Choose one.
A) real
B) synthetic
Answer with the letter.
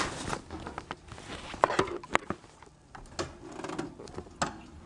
A